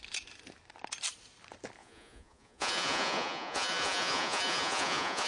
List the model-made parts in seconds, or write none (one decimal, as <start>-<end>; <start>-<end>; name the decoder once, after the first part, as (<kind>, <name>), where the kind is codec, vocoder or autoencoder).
1.8-5.3 (vocoder, Vocos)